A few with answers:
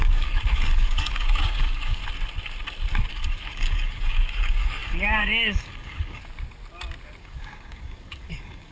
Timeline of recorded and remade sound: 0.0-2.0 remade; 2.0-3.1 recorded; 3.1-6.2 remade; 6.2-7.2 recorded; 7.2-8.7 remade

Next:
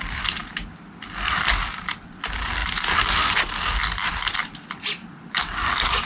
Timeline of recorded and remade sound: 0.0-6.1 recorded

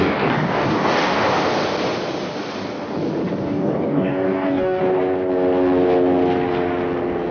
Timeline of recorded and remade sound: 0.0-1.2 remade; 1.2-3.4 recorded; 3.4-4.8 remade; 4.8-7.3 recorded

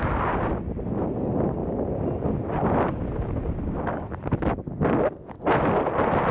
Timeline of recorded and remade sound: 0.0-6.3 recorded

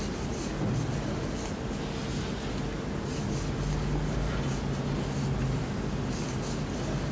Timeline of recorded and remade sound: 0.0-7.1 recorded

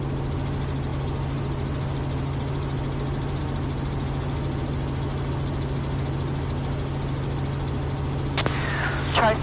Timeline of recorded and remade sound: 0.0-9.4 recorded